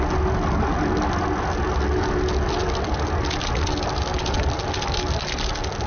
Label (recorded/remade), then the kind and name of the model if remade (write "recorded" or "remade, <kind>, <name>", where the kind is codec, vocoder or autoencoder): recorded